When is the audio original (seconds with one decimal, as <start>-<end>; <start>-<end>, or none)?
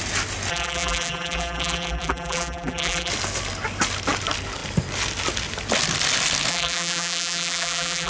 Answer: 0.0-0.5; 3.1-6.5